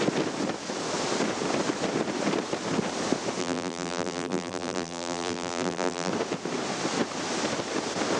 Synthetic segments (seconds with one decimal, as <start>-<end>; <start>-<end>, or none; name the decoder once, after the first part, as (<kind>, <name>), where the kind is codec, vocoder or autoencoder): 3.4-6.1 (vocoder, BigVGAN v2)